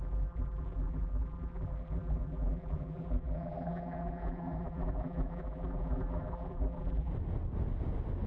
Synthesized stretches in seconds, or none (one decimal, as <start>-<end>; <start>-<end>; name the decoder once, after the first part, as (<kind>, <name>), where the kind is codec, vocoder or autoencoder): 0.0-7.1 (vocoder, BigVGAN v2)